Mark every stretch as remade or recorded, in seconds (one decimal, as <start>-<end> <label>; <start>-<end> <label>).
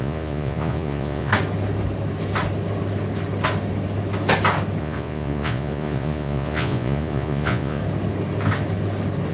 0.0-1.3 remade; 1.3-4.8 recorded; 4.8-7.8 remade; 7.8-9.3 recorded